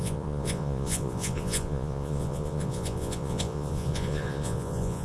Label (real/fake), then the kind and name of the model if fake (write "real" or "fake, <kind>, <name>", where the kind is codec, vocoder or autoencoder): fake, vocoder, Vocos